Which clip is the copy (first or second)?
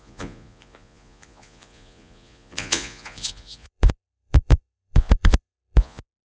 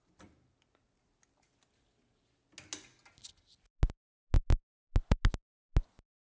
first